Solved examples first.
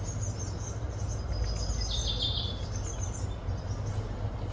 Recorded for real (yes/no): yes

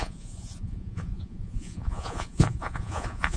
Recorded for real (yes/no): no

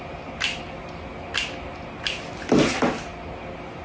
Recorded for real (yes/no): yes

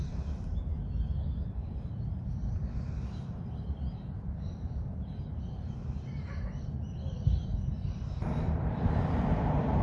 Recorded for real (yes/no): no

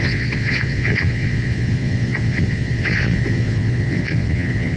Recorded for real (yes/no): no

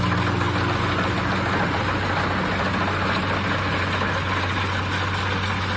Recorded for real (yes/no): yes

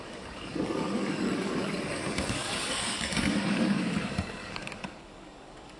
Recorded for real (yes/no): no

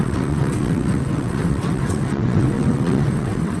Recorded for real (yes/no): no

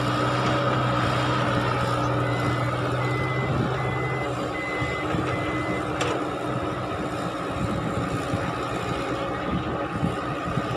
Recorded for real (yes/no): yes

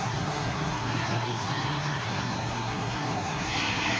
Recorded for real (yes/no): no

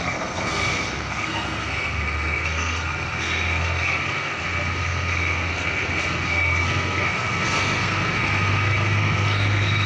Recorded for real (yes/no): no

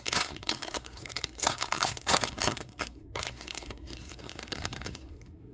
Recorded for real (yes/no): no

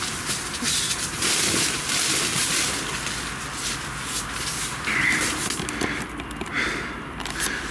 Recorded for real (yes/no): yes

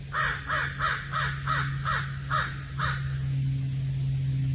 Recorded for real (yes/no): yes